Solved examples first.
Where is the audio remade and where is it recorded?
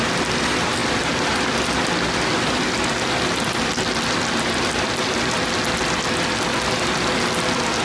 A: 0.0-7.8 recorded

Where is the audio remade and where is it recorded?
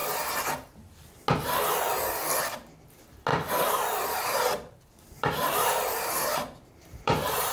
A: 0.0-3.3 recorded; 3.3-7.5 remade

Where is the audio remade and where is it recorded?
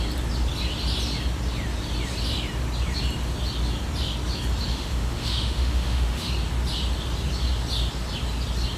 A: 0.0-4.7 recorded; 4.7-6.3 remade; 6.3-8.8 recorded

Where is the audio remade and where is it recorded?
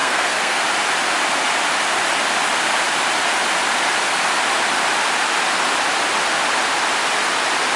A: 0.0-0.6 remade; 0.6-7.8 recorded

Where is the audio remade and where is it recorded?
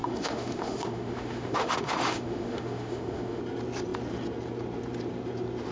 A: 0.0-3.4 remade; 3.4-5.7 recorded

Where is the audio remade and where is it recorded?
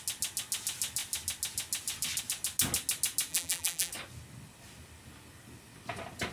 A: 0.0-3.3 recorded; 3.3-3.9 remade; 3.9-6.3 recorded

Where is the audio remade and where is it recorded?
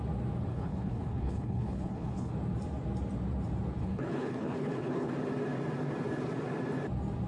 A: 0.0-0.5 recorded; 0.5-2.3 remade; 2.3-3.8 recorded; 3.8-5.1 remade; 5.1-7.3 recorded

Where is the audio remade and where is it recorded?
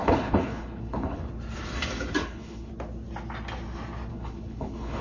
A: 0.0-1.3 remade; 1.3-2.2 recorded; 2.2-2.7 remade; 2.7-4.1 recorded; 4.1-5.0 remade